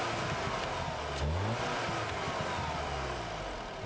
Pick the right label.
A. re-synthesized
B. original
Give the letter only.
B